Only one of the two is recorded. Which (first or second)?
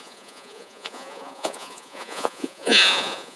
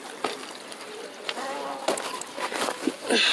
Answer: second